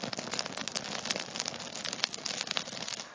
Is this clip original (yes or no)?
yes